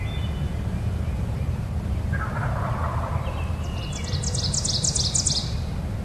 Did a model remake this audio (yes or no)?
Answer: no